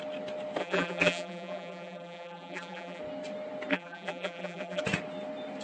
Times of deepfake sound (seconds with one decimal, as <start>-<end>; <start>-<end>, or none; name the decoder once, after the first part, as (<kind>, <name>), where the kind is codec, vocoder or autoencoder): 0.6-3.0 (vocoder, BigVGAN v2); 3.7-4.8